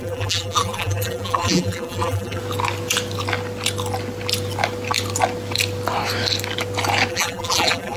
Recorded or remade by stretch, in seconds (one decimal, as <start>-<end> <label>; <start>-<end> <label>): 0.0-2.4 remade; 2.4-7.1 recorded; 7.1-8.0 remade